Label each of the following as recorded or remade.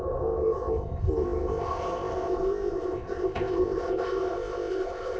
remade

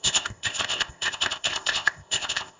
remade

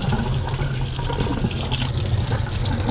recorded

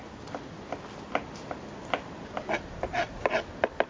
recorded